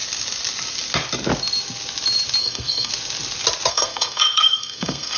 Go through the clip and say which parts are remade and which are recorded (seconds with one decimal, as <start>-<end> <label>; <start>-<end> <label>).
0.0-2.4 recorded; 2.4-2.9 remade; 2.9-3.7 recorded; 3.7-5.2 remade

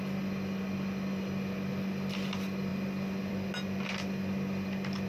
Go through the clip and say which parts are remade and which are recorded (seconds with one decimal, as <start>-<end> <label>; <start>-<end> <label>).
0.0-5.1 recorded

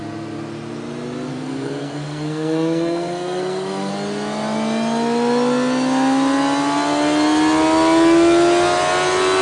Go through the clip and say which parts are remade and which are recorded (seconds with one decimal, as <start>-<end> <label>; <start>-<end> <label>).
0.0-1.3 recorded; 1.3-3.9 remade; 3.9-9.4 recorded

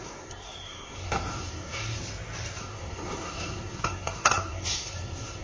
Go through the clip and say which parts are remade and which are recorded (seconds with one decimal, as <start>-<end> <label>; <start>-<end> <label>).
0.0-2.0 remade; 2.0-2.6 recorded; 2.6-5.4 remade

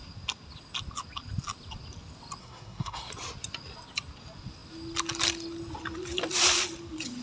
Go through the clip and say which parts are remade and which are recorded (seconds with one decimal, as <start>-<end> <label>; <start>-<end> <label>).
0.0-2.4 recorded; 2.4-3.1 remade; 3.1-7.2 recorded

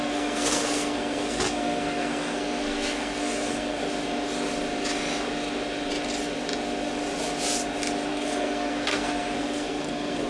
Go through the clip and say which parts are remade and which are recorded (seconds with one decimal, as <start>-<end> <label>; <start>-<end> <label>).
0.0-3.8 remade; 3.8-8.1 recorded; 8.1-10.3 remade

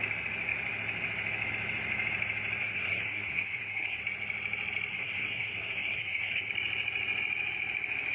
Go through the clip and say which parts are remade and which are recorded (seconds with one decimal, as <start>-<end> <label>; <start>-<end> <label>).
0.0-2.6 recorded; 2.6-4.0 remade; 4.0-4.9 recorded; 4.9-6.5 remade; 6.5-8.1 recorded

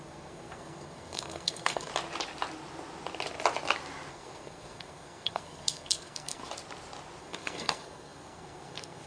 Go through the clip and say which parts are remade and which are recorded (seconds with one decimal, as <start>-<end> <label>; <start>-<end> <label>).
0.0-1.9 remade; 1.9-4.1 recorded; 4.1-6.4 remade; 6.4-7.2 recorded; 7.2-9.1 remade